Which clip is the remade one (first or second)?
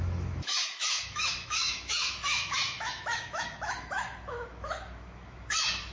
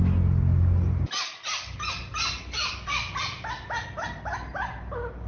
first